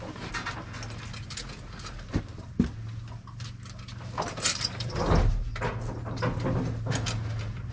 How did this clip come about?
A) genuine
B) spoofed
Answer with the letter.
A